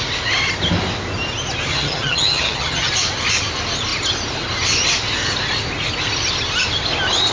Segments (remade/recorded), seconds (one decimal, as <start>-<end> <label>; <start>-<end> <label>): 0.0-1.7 recorded; 1.7-2.9 remade; 2.9-7.3 recorded